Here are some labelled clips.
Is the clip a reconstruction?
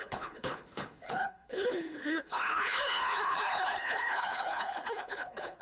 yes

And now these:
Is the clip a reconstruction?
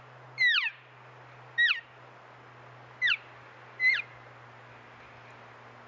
no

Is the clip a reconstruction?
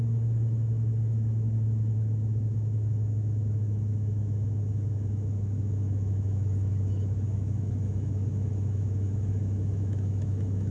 yes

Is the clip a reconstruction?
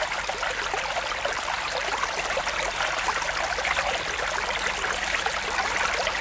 no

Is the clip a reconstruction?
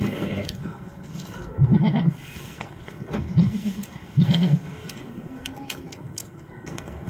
yes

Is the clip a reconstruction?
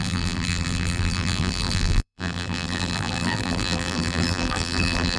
yes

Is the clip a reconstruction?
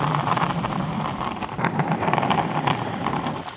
yes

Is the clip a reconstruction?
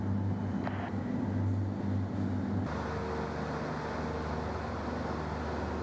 no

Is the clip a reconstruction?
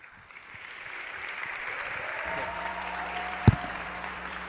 yes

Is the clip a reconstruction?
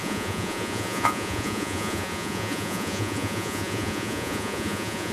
yes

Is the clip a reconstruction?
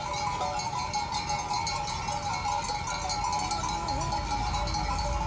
no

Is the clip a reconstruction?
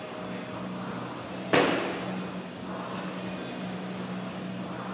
no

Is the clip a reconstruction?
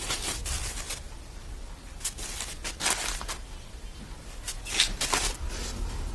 no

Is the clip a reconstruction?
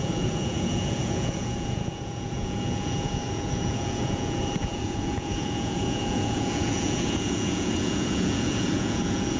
yes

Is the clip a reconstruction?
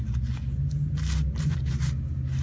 no